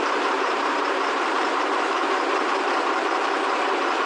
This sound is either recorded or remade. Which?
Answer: remade